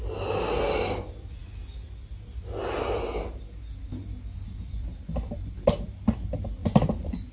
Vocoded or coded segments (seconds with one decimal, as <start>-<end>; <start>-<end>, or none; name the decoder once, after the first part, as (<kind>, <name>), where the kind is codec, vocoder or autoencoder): none

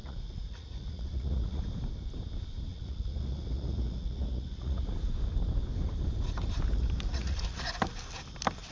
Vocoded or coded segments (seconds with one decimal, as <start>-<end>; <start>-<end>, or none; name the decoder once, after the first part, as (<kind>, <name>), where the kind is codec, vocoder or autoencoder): 0.0-1.6 (vocoder, Vocos); 2.7-4.8; 7.1-7.6

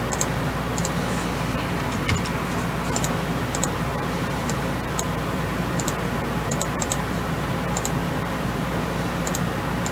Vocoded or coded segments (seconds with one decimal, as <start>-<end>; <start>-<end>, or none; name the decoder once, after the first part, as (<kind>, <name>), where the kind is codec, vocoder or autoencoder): 3.9-7.5 (vocoder, BigVGAN v2); 8.0-9.3

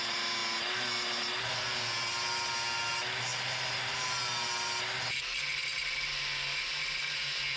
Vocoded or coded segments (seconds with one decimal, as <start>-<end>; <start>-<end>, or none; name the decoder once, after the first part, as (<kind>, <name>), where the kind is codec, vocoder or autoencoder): none

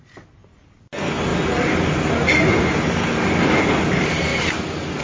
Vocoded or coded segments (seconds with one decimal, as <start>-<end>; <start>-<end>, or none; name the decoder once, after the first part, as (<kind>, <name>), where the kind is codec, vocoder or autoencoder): none

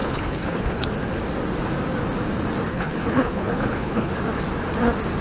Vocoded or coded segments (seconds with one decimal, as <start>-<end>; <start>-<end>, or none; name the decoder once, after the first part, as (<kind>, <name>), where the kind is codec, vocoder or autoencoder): 0.0-0.9 (codec, HILCodec); 2.7-4.1

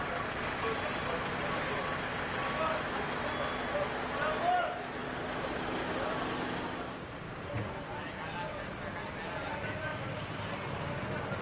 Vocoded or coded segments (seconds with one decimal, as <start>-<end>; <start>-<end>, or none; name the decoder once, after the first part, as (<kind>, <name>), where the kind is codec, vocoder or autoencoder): none